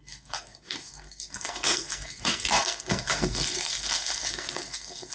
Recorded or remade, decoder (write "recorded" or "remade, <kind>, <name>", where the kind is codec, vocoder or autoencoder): remade, codec, SNAC